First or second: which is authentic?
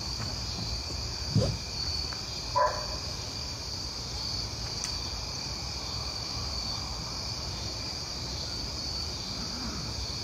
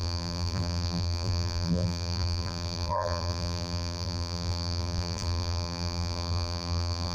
first